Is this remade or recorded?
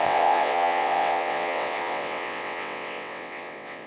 remade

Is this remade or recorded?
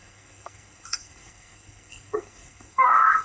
remade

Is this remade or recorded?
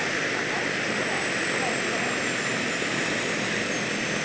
remade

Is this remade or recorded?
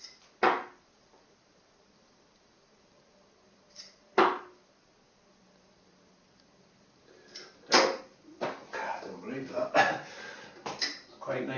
recorded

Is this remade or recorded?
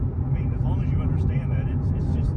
recorded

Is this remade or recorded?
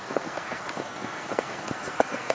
remade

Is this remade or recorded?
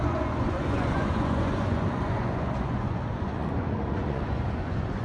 remade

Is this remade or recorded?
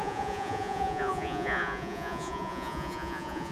remade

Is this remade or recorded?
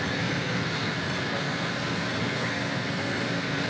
remade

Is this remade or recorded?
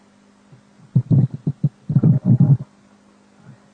recorded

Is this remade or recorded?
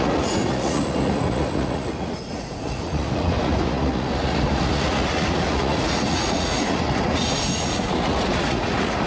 remade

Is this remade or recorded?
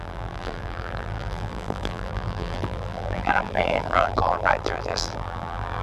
remade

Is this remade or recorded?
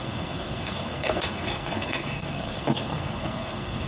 remade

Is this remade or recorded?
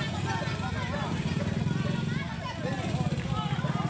recorded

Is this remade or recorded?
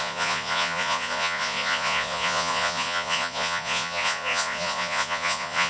remade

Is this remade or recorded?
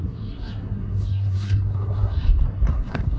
remade